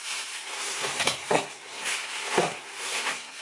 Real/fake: fake